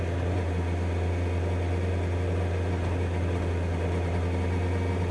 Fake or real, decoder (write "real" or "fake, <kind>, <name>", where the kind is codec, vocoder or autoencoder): real